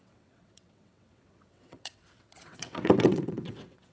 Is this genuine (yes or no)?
no